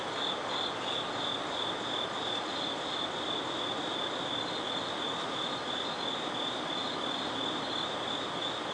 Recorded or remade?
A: recorded